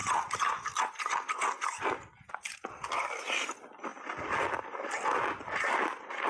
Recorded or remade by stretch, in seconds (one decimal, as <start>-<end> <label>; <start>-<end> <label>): 0.0-6.3 recorded